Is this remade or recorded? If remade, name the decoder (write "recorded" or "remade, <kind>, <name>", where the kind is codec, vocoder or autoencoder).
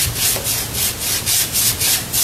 recorded